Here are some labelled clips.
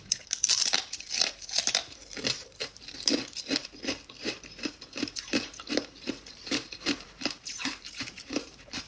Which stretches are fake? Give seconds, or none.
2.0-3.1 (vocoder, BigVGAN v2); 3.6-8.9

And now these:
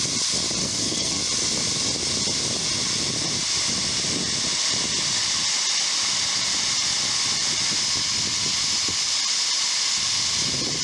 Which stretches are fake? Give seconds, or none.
0.6-1.2 (codec, SNAC)

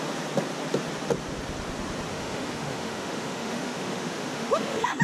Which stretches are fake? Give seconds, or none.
2.1-5.0 (autoencoder, DAC-VAE)

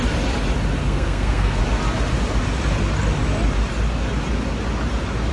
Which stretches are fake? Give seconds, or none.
0.8-1.6 (codec, SNAC)

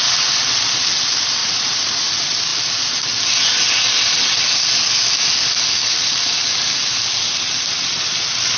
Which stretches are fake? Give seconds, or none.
1.4-2.1 (vocoder, Vocos)

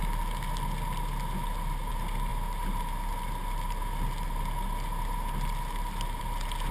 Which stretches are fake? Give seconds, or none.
none

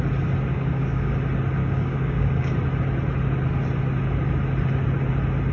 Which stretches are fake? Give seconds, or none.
0.5-1.1 (codec, DAC); 1.6-2.5